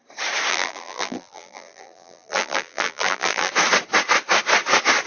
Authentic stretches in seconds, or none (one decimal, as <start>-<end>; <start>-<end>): 0.0-0.5; 3.5-5.1